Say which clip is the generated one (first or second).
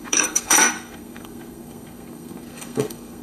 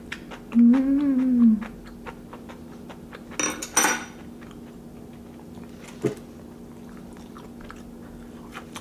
first